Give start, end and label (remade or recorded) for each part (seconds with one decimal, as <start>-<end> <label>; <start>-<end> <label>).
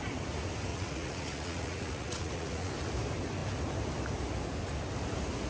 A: 0.0-0.7 recorded; 0.7-2.7 remade; 2.7-5.5 recorded